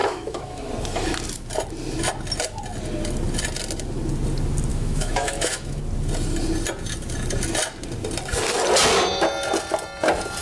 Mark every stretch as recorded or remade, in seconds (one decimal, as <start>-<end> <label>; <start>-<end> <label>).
0.0-0.7 remade; 0.7-4.7 recorded; 4.7-5.8 remade; 5.8-10.4 recorded